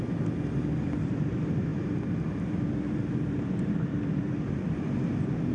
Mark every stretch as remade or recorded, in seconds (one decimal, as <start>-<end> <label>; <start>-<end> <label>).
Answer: 0.0-1.7 remade; 1.7-2.4 recorded; 2.4-5.5 remade